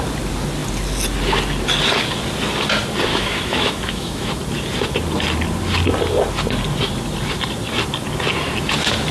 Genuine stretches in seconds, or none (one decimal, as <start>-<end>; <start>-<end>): 0.0-3.1; 4.3-9.1